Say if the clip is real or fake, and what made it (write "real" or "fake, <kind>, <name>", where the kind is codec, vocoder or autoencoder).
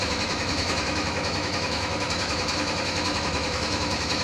fake, autoencoder, DAC-VAE